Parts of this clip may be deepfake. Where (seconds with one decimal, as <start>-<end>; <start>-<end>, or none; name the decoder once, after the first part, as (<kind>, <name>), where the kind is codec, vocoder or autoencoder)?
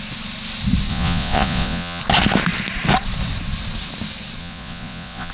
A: 0.9-2.0 (vocoder, Vocos); 4.4-5.3